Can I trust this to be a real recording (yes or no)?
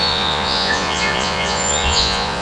no